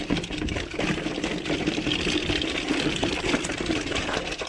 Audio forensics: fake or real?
real